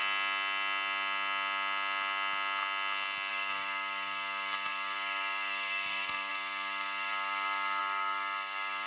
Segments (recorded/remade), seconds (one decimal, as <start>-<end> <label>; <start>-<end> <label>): 0.0-3.3 recorded; 3.3-8.9 remade